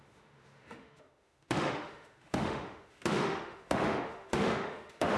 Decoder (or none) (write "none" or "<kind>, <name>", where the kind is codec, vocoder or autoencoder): autoencoder, DAC-VAE